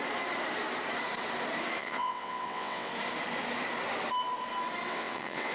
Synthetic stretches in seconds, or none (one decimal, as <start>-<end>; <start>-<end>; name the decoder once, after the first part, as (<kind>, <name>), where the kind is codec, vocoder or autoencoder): 1.8-2.9 (vocoder, WaveNeXt); 4.9-5.5